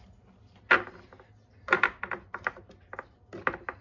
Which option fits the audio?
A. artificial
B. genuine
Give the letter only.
B